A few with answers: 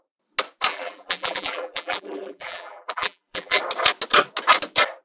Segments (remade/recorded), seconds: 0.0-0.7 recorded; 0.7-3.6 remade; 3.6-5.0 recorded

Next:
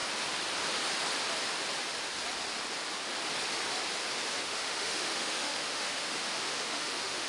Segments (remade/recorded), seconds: 0.0-4.4 recorded; 4.4-7.3 remade

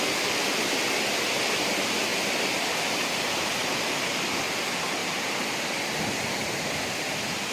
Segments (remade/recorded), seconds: 0.0-2.1 recorded; 2.1-3.1 remade; 3.1-3.6 recorded; 3.6-4.4 remade; 4.4-7.5 recorded

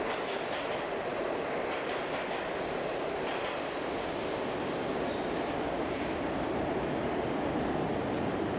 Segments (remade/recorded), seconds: 0.0-8.6 recorded